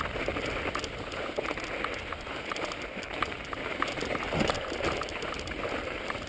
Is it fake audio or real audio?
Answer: real